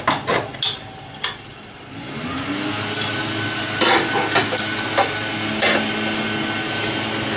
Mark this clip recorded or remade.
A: recorded